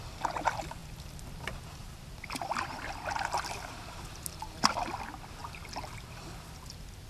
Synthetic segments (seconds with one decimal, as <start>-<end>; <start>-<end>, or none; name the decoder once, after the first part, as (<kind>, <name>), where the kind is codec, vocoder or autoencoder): 0.0-7.1 (vocoder, BigVGAN v2)